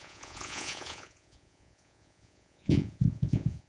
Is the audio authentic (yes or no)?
no